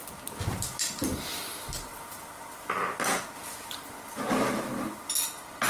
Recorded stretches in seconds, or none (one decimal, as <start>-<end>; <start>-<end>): 0.0-5.7